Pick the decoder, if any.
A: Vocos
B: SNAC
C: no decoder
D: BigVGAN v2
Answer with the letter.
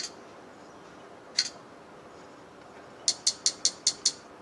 C